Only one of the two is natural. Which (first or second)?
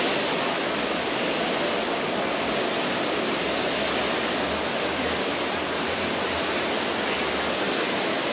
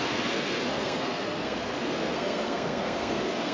first